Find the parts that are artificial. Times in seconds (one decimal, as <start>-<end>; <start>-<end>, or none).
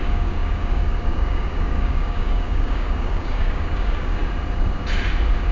0.0-4.2